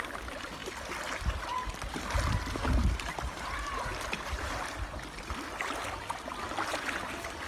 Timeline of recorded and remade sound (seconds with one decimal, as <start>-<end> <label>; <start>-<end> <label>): 0.0-7.5 recorded